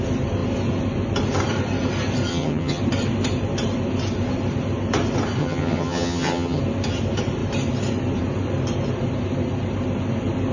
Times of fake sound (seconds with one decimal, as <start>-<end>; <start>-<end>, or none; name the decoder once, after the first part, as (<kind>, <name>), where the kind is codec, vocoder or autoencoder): 2.3-2.8 (vocoder, HiFi-GAN); 5.4-6.6